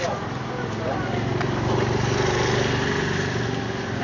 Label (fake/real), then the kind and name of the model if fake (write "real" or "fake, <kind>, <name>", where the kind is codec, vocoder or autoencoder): real